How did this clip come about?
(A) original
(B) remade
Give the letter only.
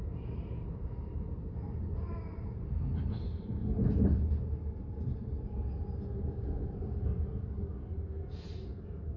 A